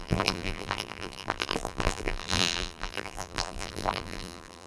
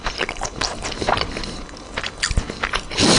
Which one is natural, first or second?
second